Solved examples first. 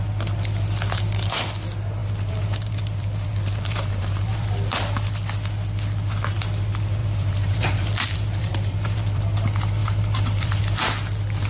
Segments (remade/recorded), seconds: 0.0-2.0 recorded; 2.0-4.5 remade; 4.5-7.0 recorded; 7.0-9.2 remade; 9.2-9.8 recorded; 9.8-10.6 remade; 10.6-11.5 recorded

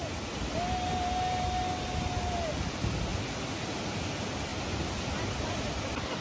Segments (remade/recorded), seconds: 0.0-2.3 recorded; 2.3-3.1 remade; 3.1-3.8 recorded; 3.8-4.5 remade; 4.5-5.7 recorded; 5.7-6.2 remade

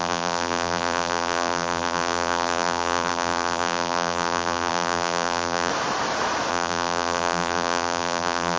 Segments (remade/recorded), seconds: 0.0-5.7 remade; 5.7-6.5 recorded; 6.5-8.6 remade

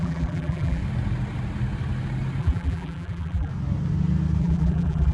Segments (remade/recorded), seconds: 0.0-0.8 remade; 0.8-2.4 recorded; 2.4-3.5 remade; 3.5-4.4 recorded; 4.4-5.1 remade

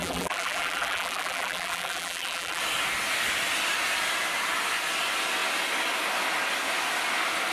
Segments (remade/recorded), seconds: 0.0-2.6 remade; 2.6-7.5 recorded

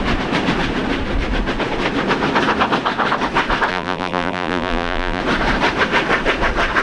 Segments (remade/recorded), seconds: 0.0-3.7 recorded; 3.7-5.2 remade; 5.2-6.8 recorded